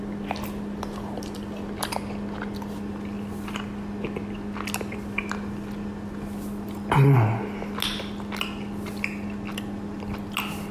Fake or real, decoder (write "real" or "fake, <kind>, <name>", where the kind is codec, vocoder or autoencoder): real